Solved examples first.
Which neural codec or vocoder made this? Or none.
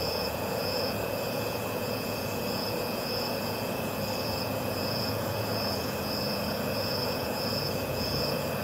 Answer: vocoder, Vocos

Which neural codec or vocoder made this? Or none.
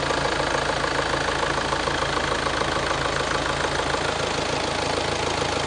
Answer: none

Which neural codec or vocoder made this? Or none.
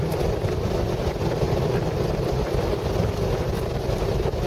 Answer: none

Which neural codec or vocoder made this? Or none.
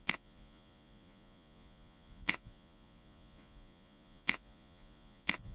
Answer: vocoder, Vocos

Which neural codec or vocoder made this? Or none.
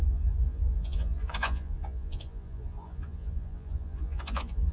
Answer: vocoder, Vocos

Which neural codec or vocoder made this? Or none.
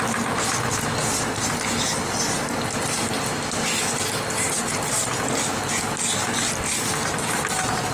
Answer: none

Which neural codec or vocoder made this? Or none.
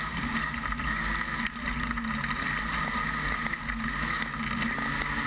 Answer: none